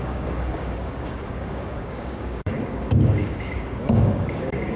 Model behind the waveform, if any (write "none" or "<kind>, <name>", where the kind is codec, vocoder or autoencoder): codec, DAC